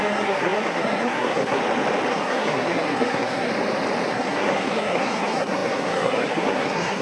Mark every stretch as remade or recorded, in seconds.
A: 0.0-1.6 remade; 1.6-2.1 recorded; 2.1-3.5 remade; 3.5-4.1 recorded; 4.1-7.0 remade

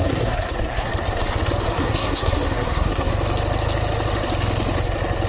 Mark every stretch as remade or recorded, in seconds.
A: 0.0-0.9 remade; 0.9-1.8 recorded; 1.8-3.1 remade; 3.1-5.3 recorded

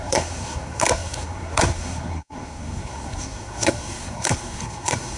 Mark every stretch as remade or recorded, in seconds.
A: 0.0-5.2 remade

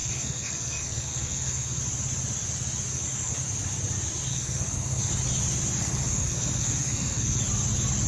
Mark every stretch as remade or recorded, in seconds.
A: 0.0-1.8 remade; 1.8-2.9 recorded; 2.9-3.4 remade; 3.4-4.3 recorded; 4.3-5.1 remade; 5.1-5.8 recorded; 5.8-7.4 remade; 7.4-8.1 recorded